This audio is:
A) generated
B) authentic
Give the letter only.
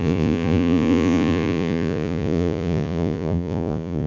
A